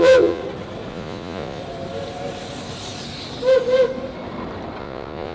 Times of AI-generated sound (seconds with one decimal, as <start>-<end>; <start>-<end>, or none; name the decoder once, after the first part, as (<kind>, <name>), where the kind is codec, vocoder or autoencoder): 0.0-0.4 (vocoder, Vocos); 0.9-1.6; 4.8-5.3